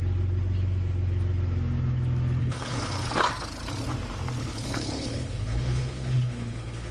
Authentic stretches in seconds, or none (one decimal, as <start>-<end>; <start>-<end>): 0.0-2.4; 3.1-4.4